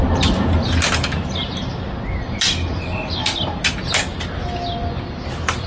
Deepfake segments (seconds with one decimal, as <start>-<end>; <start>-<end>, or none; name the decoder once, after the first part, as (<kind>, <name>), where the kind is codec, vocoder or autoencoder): none

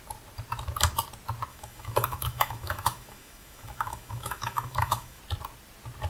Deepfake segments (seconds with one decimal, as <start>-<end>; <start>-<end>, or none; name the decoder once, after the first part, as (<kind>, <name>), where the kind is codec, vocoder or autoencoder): 1.5-5.2 (autoencoder, DAC-VAE)